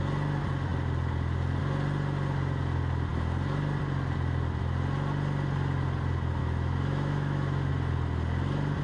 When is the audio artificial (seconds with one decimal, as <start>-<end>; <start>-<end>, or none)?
6.4-7.7